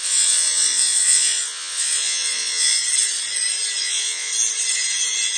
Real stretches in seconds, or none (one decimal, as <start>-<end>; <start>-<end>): 2.8-3.8; 4.3-5.4